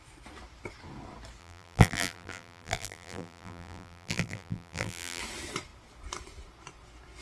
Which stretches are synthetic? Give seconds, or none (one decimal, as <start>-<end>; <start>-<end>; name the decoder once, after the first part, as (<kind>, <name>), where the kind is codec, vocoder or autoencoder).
1.4-5.2 (vocoder, BigVGAN v2)